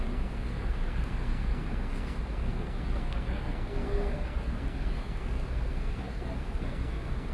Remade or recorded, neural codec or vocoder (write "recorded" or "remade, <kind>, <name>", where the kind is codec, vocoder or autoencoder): remade, codec, SNAC